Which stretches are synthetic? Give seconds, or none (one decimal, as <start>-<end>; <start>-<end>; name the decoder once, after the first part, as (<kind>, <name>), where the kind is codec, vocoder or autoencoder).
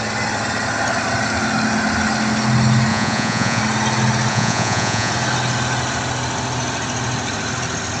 2.9-3.6 (vocoder, Vocos); 4.3-5.1